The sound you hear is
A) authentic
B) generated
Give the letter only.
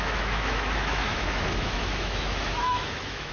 B